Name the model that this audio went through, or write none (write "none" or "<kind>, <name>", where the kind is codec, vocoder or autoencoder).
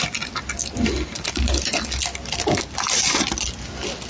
none